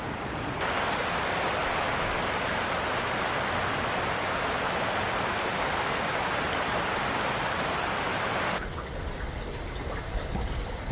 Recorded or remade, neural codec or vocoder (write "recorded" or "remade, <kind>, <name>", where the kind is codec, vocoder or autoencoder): recorded